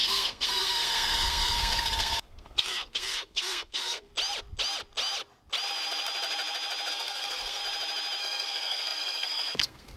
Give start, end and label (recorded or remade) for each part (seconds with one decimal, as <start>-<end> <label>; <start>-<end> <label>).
0.0-4.1 remade; 4.1-6.9 recorded; 6.9-7.6 remade; 7.6-8.2 recorded; 8.2-10.0 remade